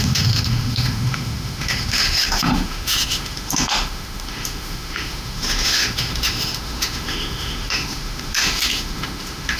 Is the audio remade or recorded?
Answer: remade